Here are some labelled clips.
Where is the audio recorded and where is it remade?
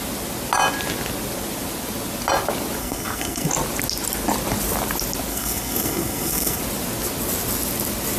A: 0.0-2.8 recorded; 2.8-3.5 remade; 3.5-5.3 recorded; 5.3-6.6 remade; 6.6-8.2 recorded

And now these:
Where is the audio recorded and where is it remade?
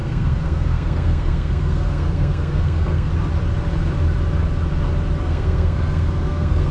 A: 0.0-3.1 remade; 3.1-5.2 recorded; 5.2-6.7 remade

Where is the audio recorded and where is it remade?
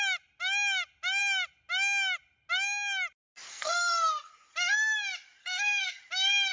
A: 0.0-3.5 recorded; 3.5-4.3 remade; 4.3-5.4 recorded; 5.4-6.0 remade; 6.0-6.5 recorded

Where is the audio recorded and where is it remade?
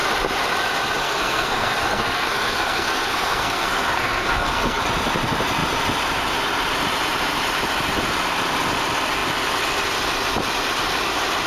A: 0.0-1.0 recorded; 1.0-4.8 remade; 4.8-11.5 recorded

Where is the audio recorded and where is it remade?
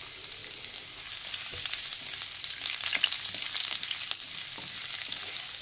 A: 0.0-5.6 recorded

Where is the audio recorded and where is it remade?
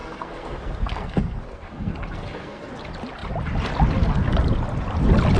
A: 0.0-2.7 remade; 2.7-5.4 recorded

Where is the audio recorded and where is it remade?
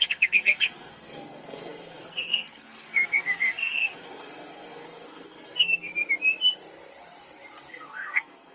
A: 0.0-5.9 remade; 5.9-7.7 recorded; 7.7-8.5 remade